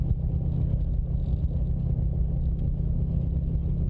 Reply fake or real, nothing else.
real